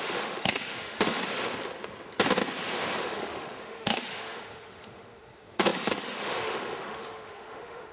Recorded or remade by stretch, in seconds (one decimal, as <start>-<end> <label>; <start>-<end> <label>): 0.0-1.2 remade; 1.2-3.0 recorded; 3.0-7.9 remade